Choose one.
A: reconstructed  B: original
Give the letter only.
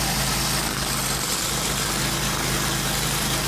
B